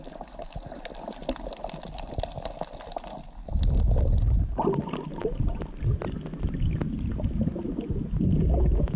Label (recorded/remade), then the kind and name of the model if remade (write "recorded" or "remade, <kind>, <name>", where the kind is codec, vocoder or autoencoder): recorded